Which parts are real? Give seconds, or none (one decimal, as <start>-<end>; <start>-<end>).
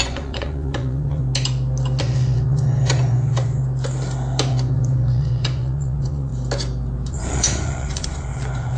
1.2-2.0; 3.6-4.5; 6.3-7.1